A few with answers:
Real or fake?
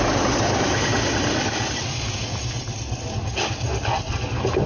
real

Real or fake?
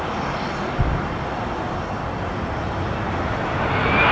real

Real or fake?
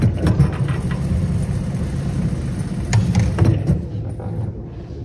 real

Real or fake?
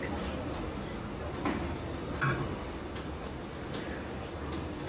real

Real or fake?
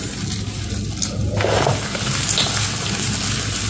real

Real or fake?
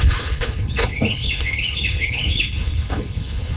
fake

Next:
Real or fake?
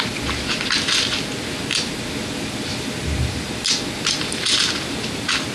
real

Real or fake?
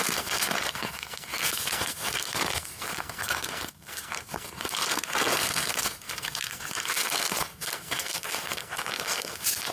fake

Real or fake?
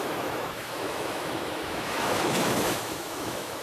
fake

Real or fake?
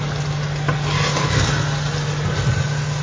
real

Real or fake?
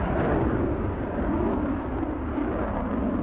real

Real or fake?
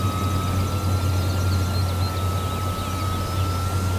real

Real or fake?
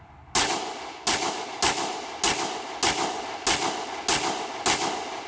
real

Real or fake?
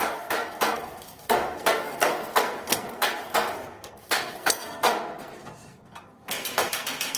fake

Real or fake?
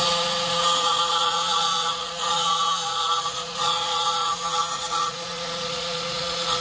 fake